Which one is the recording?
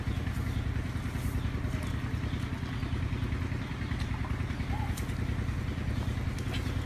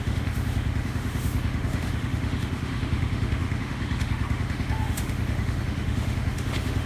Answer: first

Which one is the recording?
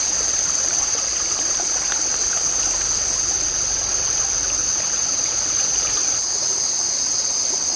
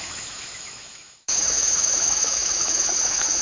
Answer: first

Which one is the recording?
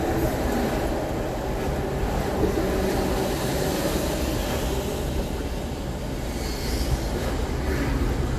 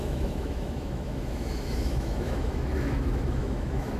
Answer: first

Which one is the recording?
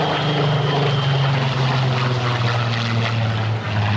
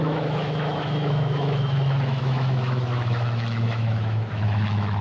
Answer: first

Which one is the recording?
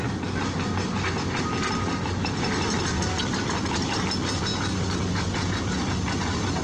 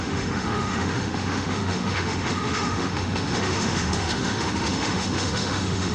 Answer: first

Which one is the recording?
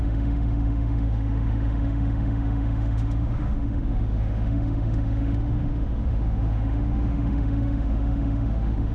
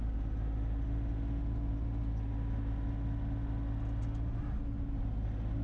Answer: second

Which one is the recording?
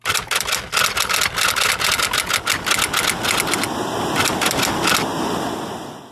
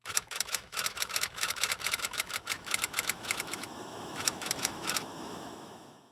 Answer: first